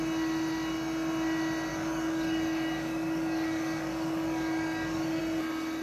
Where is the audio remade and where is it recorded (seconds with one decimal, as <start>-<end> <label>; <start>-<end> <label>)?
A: 0.0-1.7 recorded; 1.7-5.2 remade; 5.2-5.8 recorded